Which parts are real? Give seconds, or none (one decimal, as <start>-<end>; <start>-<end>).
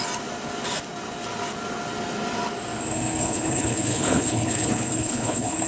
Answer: 0.0-3.2